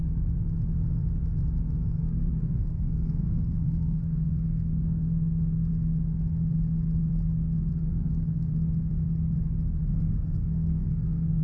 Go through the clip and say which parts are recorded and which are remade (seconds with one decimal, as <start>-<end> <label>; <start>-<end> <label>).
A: 0.0-1.8 recorded; 1.8-5.7 remade; 5.7-7.7 recorded; 7.7-8.5 remade; 8.5-9.9 recorded; 9.9-11.4 remade